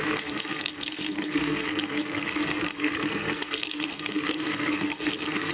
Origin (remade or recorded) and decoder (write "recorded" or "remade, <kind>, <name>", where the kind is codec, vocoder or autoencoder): remade, codec, SNAC